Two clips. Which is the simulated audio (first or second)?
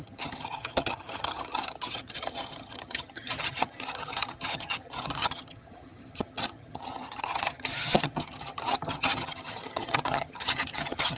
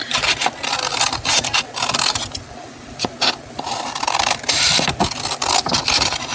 first